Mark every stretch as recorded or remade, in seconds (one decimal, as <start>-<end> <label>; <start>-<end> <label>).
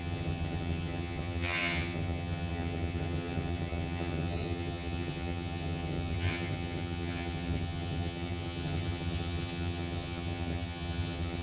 0.0-11.4 remade